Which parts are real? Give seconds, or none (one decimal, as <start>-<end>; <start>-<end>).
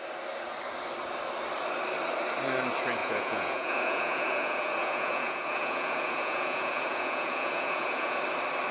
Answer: 0.0-3.0; 8.2-8.7